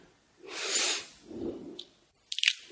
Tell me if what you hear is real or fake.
real